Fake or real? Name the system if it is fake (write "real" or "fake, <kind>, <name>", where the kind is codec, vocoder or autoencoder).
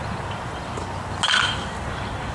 real